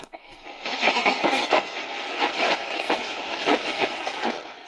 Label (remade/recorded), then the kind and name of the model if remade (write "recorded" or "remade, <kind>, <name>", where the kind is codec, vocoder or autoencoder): remade, codec, SNAC